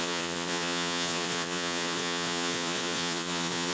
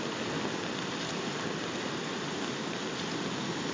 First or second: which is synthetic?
first